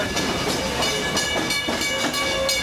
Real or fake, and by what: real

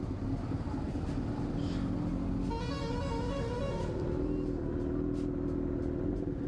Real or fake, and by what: real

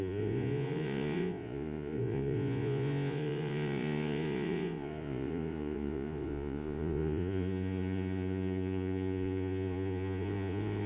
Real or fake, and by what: fake, vocoder, Vocos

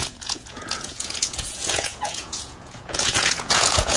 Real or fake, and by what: fake, vocoder, Vocos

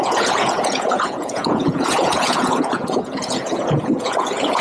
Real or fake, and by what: fake, vocoder, Vocos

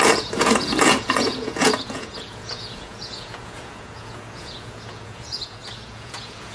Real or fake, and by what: fake, vocoder, Vocos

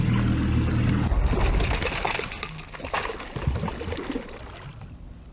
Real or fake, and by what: real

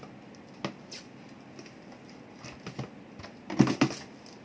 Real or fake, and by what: real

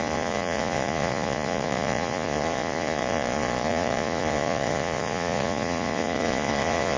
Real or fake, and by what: fake, vocoder, Vocos